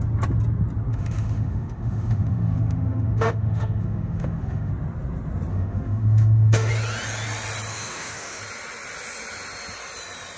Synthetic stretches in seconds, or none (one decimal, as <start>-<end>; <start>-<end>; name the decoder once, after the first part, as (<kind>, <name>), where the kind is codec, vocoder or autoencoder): 0.9-4.7 (autoencoder, DAC-VAE); 5.5-6.7; 7.7-8.4